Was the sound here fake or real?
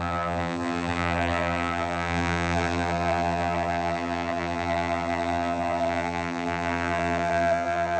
fake